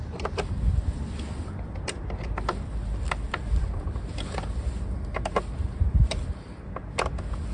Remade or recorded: remade